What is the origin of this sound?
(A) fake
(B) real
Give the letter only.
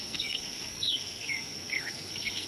A